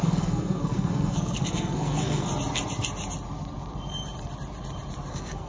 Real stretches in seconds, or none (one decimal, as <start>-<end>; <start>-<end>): 2.3-5.1